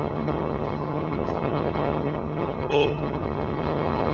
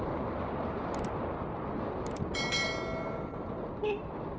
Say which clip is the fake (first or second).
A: first